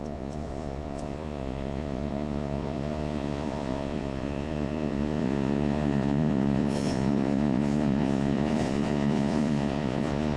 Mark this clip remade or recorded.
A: remade